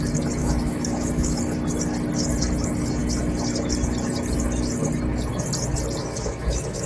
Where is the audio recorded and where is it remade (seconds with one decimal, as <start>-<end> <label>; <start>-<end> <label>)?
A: 0.0-0.4 recorded; 0.4-1.4 remade; 1.4-6.0 recorded; 6.0-6.9 remade